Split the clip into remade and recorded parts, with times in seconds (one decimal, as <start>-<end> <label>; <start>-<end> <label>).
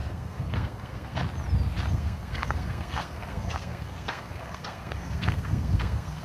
0.0-1.2 remade; 1.2-1.9 recorded; 1.9-6.2 remade